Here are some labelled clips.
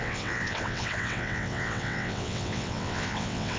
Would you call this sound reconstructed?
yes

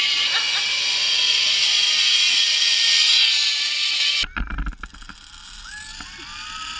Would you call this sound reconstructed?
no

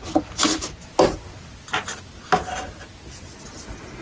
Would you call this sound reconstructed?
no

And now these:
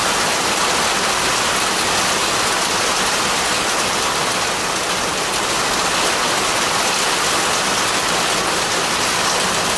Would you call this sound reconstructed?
no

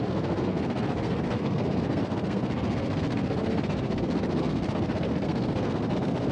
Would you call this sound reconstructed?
yes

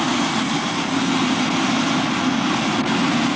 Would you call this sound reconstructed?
yes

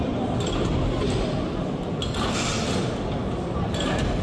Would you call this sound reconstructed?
no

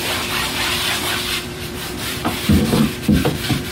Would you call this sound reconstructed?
yes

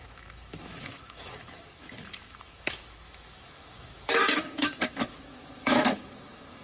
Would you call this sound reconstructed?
yes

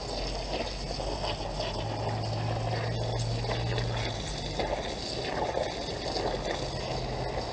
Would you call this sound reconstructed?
no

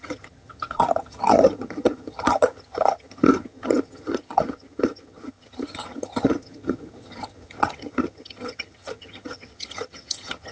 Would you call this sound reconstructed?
yes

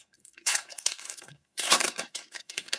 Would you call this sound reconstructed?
yes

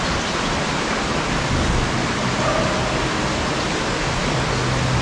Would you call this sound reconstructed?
no